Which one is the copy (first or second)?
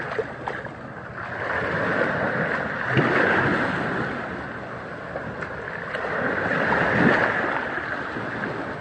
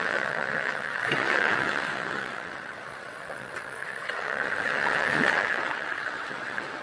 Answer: second